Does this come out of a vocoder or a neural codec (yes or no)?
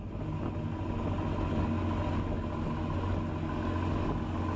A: no